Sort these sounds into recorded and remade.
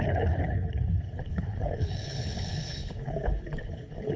remade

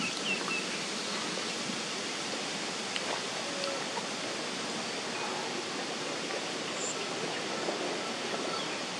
recorded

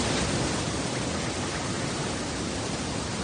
recorded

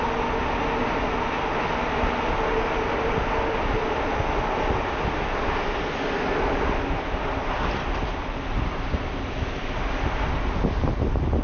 recorded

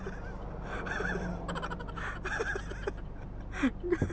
recorded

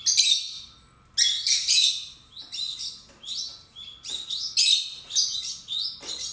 recorded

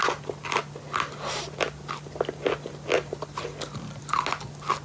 recorded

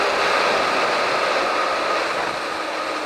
recorded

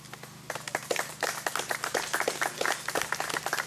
recorded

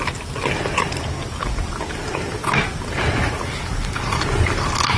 recorded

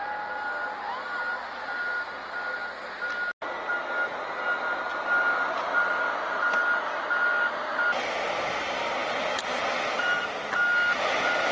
recorded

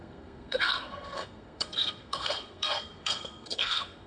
remade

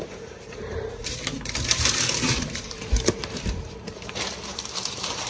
remade